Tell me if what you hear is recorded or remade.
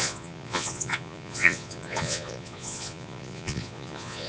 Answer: remade